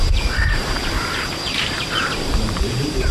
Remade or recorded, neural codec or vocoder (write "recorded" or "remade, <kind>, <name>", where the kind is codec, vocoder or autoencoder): remade, vocoder, BigVGAN v2